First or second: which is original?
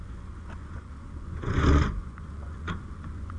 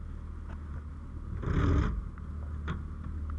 second